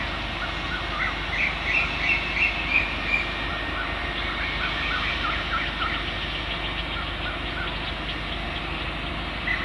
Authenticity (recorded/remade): recorded